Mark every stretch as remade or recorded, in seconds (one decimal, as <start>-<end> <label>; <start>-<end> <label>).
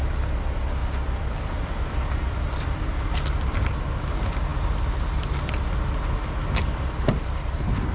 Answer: 0.0-7.9 recorded